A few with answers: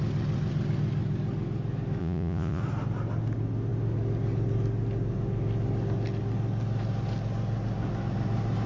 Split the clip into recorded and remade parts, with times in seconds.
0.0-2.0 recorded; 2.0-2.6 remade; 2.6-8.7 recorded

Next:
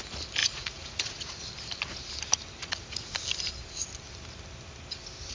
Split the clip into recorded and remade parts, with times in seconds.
0.0-0.4 recorded; 0.4-1.4 remade; 1.4-2.6 recorded; 2.6-3.1 remade; 3.1-5.3 recorded

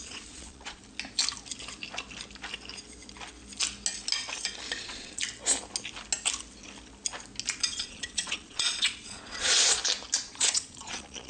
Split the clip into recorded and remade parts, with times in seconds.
0.0-0.8 remade; 0.8-4.8 recorded; 4.8-5.2 remade; 5.2-7.6 recorded; 7.6-9.8 remade; 9.8-10.3 recorded; 10.3-11.3 remade